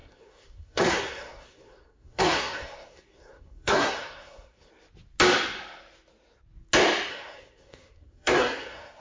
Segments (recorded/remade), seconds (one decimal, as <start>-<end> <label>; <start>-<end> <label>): 0.0-4.7 remade; 4.7-7.1 recorded; 7.1-9.0 remade